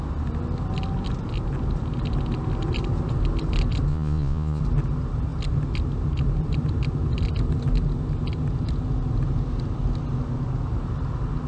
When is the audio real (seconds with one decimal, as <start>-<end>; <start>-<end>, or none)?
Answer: 0.0-3.9; 4.6-11.5